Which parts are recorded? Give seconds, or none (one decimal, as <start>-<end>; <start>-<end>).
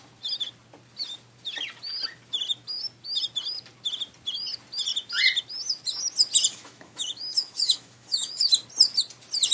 0.0-6.5; 8.5-9.5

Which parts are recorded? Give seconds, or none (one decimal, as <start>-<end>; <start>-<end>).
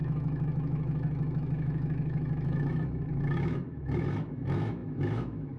none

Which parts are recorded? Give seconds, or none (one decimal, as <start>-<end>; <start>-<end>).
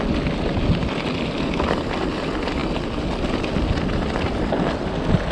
0.0-5.3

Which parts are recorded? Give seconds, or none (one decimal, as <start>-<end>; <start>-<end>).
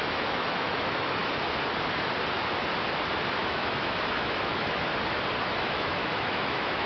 1.2-3.4; 4.8-5.4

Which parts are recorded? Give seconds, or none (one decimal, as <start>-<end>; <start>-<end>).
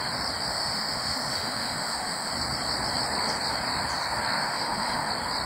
0.0-0.5; 2.3-4.4; 5.1-5.5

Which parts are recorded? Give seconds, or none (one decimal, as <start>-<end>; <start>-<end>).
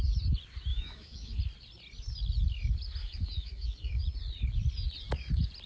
0.0-0.7; 1.4-3.0; 4.0-5.7